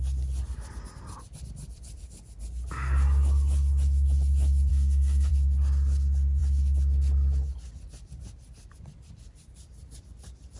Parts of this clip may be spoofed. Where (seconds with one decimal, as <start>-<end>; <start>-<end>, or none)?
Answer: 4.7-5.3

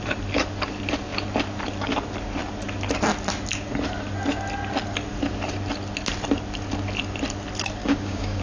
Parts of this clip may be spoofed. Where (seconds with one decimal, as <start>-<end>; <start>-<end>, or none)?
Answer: 7.8-8.4

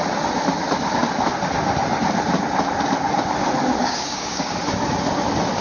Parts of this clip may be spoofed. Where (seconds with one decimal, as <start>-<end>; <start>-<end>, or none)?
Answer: 3.8-4.5